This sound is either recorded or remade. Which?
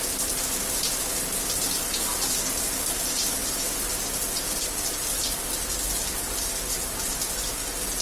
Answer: recorded